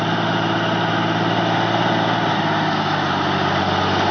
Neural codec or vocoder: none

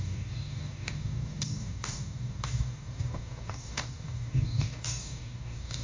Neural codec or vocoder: codec, DAC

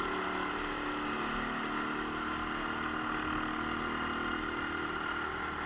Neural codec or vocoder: none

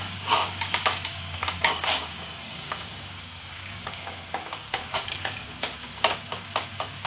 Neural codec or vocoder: codec, DAC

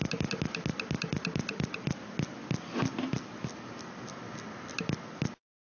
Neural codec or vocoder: none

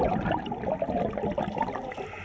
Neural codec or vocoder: none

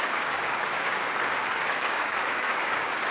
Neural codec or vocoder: codec, DAC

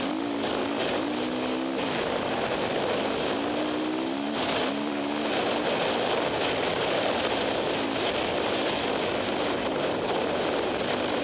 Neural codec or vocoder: none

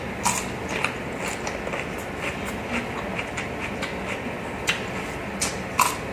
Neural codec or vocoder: none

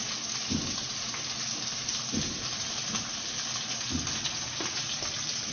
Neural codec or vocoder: none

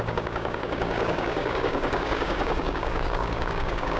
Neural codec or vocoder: codec, DAC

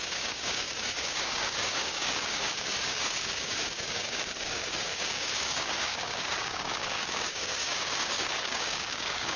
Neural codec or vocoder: codec, DAC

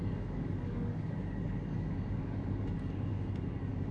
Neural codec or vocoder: codec, DAC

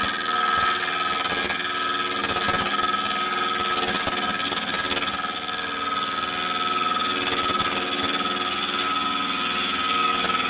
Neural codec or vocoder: none